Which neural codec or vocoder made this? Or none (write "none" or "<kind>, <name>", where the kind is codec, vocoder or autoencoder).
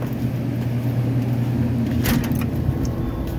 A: none